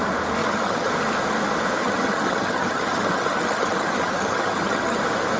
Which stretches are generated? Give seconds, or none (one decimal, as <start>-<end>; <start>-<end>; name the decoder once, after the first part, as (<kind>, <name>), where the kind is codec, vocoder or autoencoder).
0.4-0.9 (vocoder, HiFi-GAN); 1.8-5.0